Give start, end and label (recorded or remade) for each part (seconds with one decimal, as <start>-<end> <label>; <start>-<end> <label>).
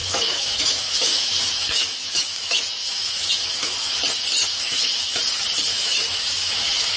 0.0-4.0 remade; 4.0-4.5 recorded; 4.5-5.2 remade; 5.2-5.7 recorded; 5.7-7.0 remade